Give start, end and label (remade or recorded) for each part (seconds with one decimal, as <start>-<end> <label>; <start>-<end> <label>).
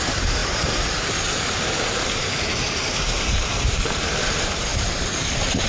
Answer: 0.0-5.7 remade